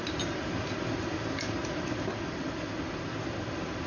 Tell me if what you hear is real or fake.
real